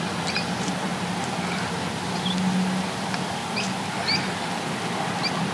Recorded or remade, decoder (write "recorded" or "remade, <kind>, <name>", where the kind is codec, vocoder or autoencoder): recorded